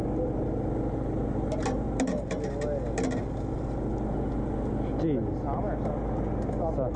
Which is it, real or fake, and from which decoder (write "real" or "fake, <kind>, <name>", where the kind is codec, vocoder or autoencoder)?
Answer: real